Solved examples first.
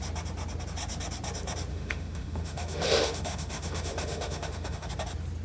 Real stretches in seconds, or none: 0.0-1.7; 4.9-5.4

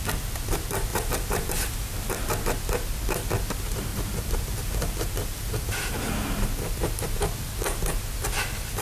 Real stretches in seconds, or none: 0.0-0.9; 2.1-3.9; 7.3-8.8

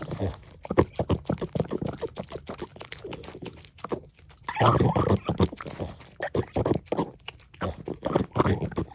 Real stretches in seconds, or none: 0.0-8.9

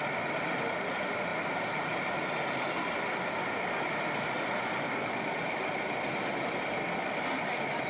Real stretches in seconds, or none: 0.0-1.3; 2.3-7.9

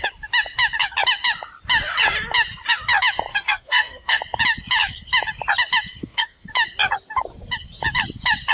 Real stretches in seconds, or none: 0.0-3.3; 4.2-6.0; 6.5-8.5

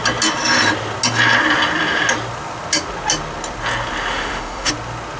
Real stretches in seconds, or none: 0.0-4.1; 4.7-5.2